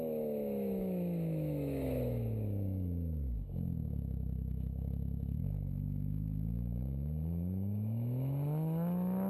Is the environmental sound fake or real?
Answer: fake